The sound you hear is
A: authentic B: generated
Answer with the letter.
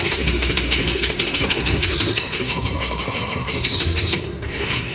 B